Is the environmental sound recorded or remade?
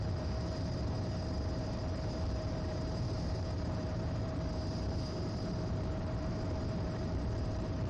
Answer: remade